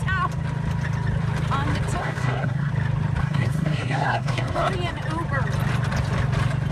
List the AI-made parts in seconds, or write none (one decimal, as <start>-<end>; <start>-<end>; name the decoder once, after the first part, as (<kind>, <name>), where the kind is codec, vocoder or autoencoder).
2.0-2.7 (codec, SNAC); 3.2-4.7